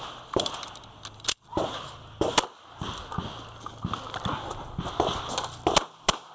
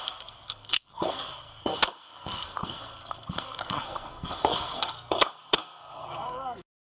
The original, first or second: first